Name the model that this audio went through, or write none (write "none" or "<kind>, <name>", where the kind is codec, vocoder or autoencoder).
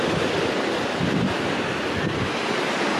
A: vocoder, BigVGAN v2